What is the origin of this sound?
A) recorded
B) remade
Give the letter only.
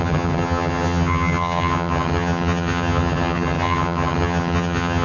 B